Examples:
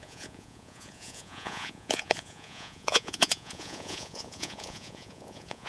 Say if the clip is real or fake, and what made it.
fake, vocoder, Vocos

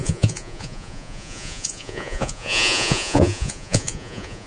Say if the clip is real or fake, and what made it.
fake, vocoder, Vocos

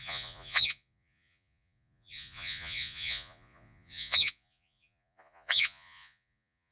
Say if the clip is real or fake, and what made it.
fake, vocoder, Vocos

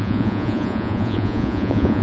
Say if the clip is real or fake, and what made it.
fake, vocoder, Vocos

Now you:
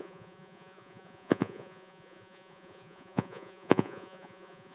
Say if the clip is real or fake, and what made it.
fake, vocoder, Vocos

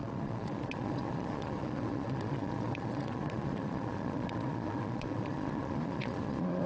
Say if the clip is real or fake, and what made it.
fake, vocoder, Vocos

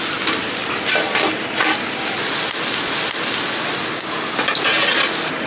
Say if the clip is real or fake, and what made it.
real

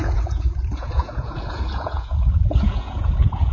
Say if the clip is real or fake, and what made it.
fake, vocoder, Vocos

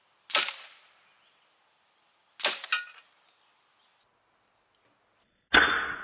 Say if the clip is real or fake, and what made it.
real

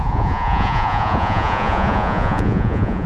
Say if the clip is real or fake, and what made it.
fake, vocoder, Vocos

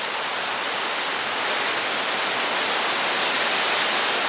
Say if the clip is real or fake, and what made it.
real